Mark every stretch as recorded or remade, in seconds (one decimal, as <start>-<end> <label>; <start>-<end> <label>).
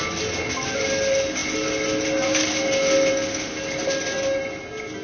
0.0-5.0 recorded